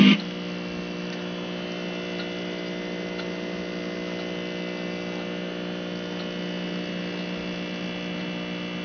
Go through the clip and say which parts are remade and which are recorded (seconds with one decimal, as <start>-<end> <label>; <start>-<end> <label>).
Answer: 0.0-8.8 recorded